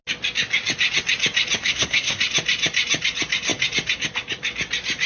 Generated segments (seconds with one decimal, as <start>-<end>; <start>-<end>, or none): 1.6-2.2